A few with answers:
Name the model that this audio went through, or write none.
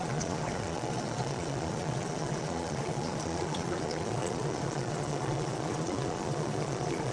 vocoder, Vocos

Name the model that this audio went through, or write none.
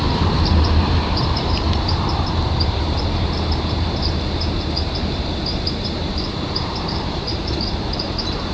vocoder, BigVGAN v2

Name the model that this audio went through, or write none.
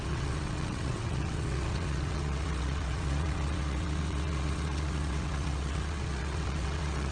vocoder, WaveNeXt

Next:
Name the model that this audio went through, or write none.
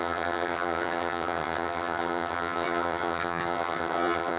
vocoder, HiFi-GAN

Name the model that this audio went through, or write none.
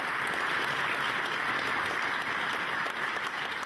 none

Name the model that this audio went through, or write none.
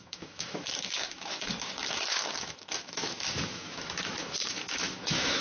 autoencoder, DAC-VAE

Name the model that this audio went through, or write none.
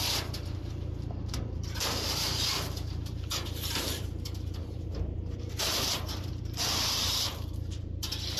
vocoder, BigVGAN v2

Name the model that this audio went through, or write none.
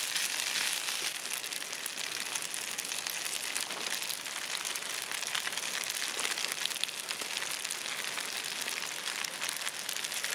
none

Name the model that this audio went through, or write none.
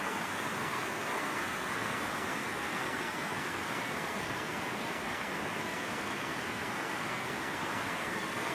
codec, SNAC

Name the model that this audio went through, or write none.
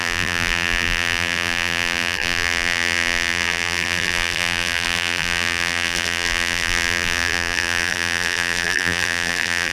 vocoder, BigVGAN v2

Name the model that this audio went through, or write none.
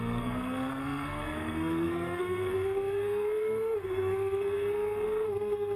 codec, SNAC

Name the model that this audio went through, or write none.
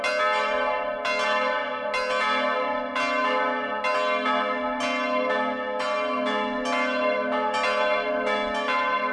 none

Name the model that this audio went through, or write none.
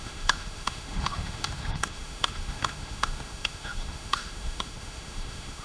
autoencoder, DAC-VAE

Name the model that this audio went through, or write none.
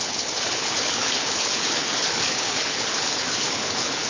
codec, HILCodec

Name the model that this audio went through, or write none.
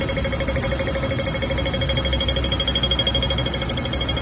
none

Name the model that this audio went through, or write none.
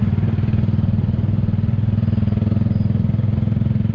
none